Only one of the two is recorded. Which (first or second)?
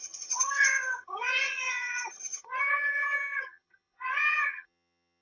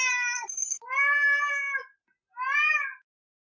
second